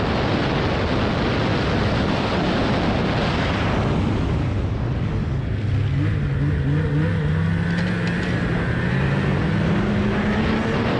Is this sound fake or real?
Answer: real